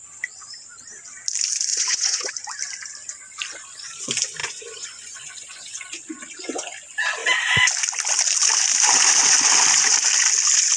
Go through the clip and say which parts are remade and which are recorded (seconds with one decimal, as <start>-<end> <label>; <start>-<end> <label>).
0.0-1.7 recorded; 1.7-2.3 remade; 2.3-4.4 recorded; 4.4-5.8 remade; 5.8-10.8 recorded

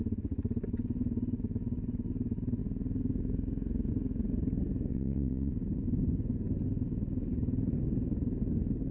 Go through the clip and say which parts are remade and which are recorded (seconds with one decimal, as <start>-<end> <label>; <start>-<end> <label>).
0.0-4.9 recorded; 4.9-5.5 remade; 5.5-8.9 recorded

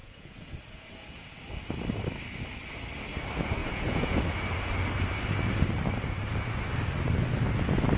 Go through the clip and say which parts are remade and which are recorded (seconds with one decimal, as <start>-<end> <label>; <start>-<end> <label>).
0.0-1.3 remade; 1.3-3.6 recorded; 3.6-4.2 remade; 4.2-8.0 recorded

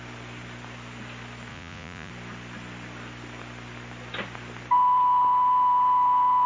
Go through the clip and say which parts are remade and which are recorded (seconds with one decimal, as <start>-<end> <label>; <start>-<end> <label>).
0.0-1.5 recorded; 1.5-2.1 remade; 2.1-6.5 recorded

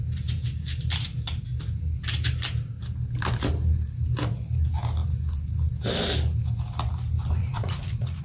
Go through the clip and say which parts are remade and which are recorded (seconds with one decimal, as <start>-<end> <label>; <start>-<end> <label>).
0.0-7.4 recorded; 7.4-8.2 remade

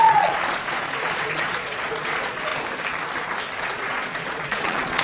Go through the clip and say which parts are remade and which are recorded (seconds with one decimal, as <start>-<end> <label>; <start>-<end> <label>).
0.0-2.5 remade; 2.5-3.6 recorded; 3.6-5.0 remade